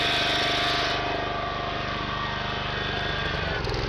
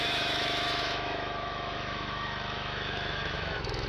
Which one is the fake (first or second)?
second